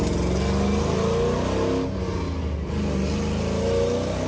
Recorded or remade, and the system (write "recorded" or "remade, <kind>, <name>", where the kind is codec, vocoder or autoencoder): recorded